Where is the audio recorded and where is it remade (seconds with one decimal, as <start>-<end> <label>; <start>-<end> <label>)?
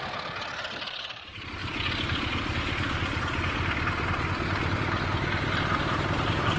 0.0-1.6 remade; 1.6-5.6 recorded; 5.6-6.6 remade